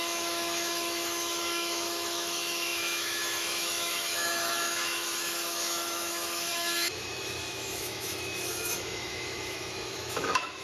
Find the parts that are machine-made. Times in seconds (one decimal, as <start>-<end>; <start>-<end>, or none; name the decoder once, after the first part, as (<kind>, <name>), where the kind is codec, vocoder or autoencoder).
0.0-10.6 (autoencoder, DAC-VAE)